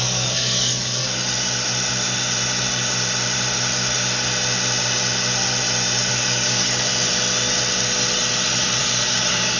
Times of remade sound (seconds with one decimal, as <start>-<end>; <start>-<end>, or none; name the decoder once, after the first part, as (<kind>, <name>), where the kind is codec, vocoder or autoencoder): 0.0-1.0 (codec, DAC); 6.1-6.9; 8.8-9.6